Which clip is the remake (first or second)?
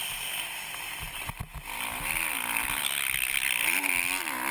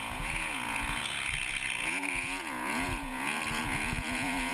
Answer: second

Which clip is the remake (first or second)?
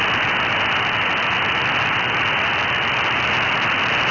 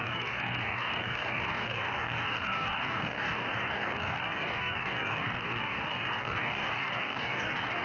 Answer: second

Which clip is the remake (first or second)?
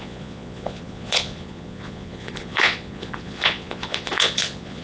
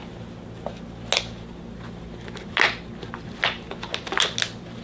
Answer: first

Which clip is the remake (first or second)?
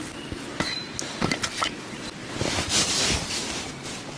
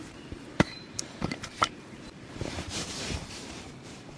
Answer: second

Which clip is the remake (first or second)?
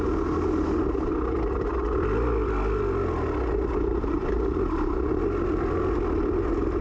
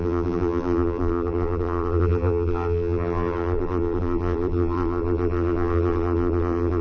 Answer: second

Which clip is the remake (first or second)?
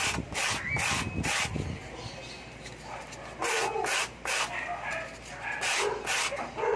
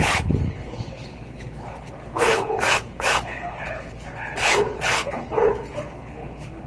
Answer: second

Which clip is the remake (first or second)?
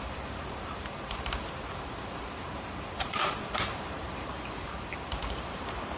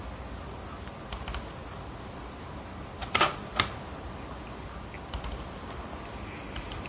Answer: first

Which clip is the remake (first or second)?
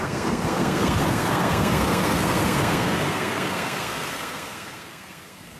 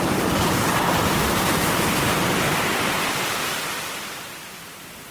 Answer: first